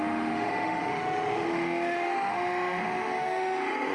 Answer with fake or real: fake